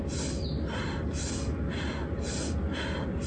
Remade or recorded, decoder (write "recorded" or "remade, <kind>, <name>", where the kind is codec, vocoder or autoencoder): recorded